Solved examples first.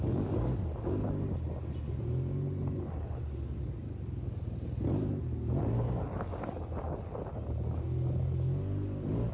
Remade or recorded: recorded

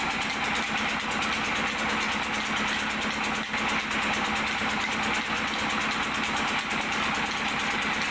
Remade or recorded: recorded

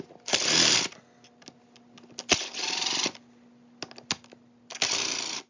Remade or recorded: recorded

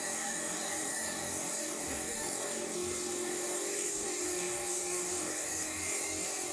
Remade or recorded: remade